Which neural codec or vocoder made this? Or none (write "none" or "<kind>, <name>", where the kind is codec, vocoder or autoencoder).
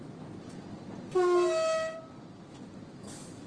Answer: none